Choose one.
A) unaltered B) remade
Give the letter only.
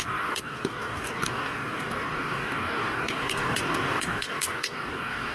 B